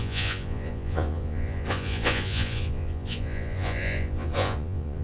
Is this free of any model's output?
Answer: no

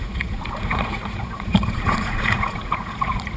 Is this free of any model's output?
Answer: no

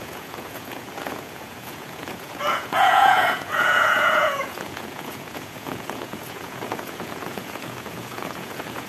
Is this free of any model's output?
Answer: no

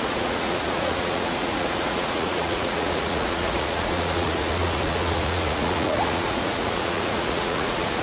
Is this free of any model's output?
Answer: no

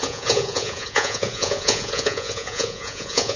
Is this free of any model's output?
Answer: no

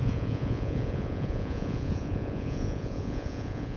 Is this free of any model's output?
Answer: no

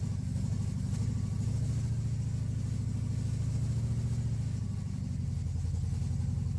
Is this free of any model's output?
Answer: yes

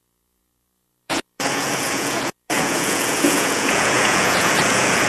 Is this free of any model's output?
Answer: no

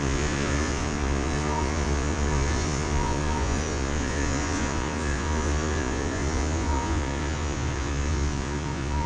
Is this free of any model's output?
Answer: no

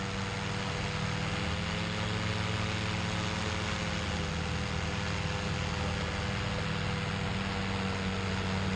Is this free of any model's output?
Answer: yes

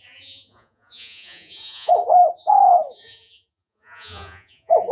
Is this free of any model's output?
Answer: no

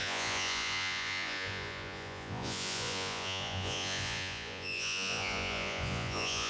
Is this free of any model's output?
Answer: no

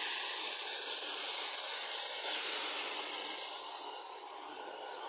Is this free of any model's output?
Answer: yes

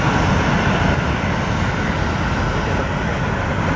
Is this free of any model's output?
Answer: yes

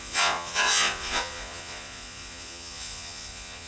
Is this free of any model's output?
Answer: no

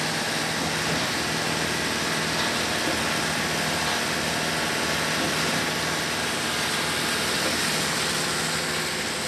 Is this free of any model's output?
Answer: yes